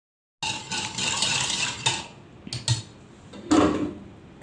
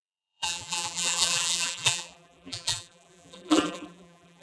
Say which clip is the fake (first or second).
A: second